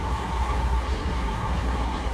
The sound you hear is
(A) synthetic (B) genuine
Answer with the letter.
A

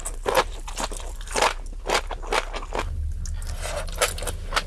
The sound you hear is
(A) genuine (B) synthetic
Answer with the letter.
A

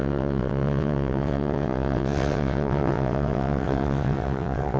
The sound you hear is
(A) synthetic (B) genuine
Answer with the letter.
A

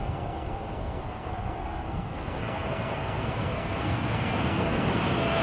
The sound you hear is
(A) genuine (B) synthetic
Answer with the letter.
B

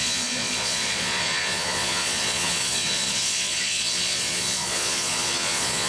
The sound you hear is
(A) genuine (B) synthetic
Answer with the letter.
B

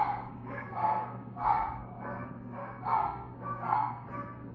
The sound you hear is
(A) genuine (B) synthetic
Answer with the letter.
B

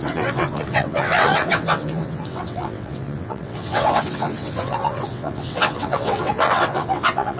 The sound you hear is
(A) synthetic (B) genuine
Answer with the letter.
A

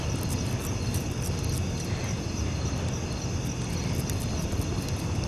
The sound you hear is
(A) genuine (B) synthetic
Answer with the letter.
A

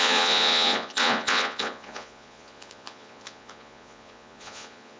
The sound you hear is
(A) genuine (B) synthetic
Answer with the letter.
B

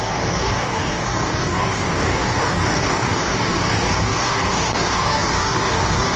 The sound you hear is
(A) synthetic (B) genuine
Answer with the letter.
A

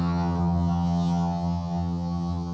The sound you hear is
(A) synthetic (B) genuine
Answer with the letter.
A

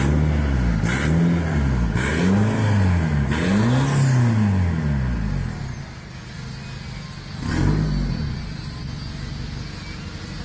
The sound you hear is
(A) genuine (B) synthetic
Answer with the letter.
A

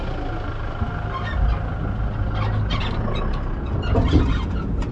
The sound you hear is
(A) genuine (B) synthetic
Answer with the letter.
A